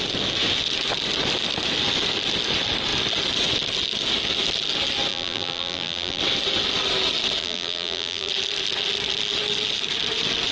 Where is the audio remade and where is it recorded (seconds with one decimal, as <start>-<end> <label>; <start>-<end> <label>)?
0.0-5.1 recorded; 5.1-6.2 remade; 6.2-7.4 recorded; 7.4-8.3 remade; 8.3-10.5 recorded